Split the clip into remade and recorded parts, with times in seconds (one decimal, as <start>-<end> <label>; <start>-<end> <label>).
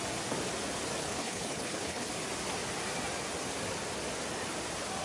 0.0-1.0 recorded; 1.0-2.1 remade; 2.1-5.0 recorded